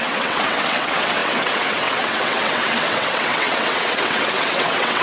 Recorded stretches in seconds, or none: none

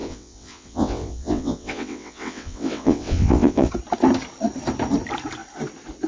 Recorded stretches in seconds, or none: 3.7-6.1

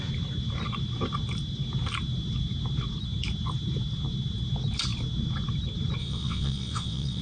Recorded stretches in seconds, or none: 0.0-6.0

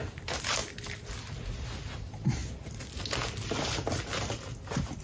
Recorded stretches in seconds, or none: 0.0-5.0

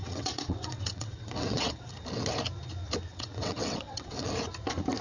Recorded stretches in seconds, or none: 1.9-3.1; 4.3-5.0